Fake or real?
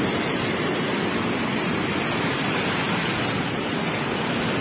real